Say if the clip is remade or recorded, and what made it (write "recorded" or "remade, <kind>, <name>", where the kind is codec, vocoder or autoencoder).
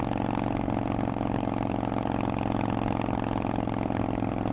recorded